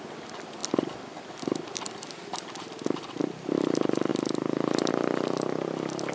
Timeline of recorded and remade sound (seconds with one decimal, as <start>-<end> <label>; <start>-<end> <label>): 0.0-6.1 recorded